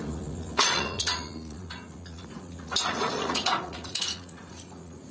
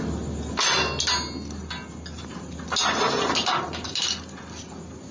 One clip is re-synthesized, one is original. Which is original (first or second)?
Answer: second